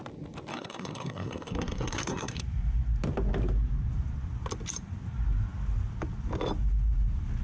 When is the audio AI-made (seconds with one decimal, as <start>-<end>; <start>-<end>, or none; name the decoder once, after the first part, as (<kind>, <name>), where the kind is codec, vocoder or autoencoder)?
0.5-2.4 (codec, SNAC)